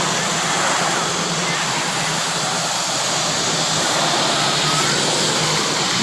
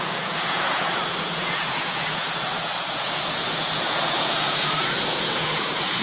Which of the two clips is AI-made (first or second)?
second